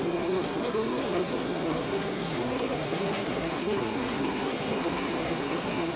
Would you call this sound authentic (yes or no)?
no